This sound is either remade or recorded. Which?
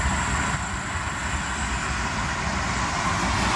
recorded